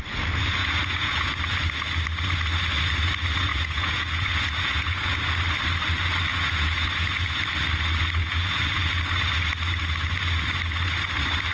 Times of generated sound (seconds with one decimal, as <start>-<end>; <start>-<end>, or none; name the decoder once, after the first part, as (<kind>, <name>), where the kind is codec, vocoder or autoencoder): 0.6-1.4 (vocoder, Vocos); 3.5-5.2; 6.3-7.4; 8.2-9.0